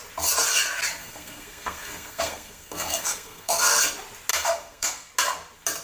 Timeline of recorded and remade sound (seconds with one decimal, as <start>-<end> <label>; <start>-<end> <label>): 0.0-1.0 recorded; 1.0-3.8 remade; 3.8-4.3 recorded; 4.3-5.1 remade; 5.1-5.8 recorded